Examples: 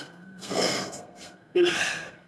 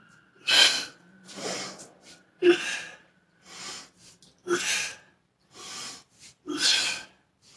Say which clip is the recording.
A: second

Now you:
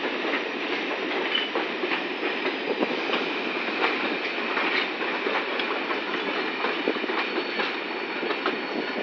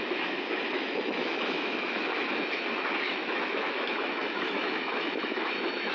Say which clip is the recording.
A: first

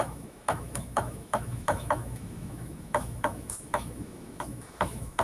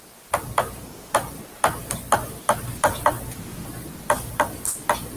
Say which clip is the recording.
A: second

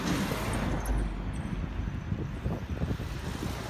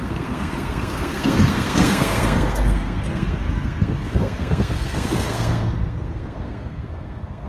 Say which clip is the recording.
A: first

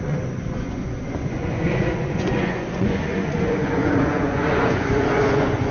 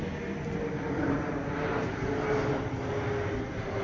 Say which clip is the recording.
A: second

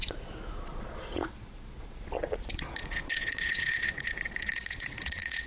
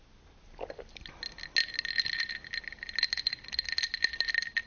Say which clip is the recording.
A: second